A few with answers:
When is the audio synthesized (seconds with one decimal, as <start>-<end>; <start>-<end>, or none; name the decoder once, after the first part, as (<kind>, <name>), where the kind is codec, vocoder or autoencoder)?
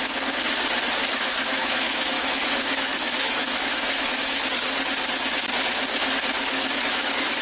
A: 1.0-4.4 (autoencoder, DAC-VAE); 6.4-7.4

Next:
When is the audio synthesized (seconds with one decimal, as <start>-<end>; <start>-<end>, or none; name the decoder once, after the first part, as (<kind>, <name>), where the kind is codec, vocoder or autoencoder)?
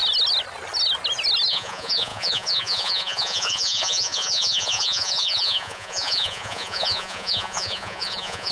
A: 1.5-8.5 (vocoder, Vocos)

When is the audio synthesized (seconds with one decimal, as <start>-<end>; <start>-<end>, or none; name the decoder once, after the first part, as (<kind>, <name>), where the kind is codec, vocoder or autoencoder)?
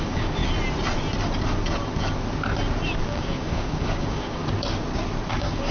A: 0.0-0.4 (codec, DAC); 3.1-4.4; 5.3-5.7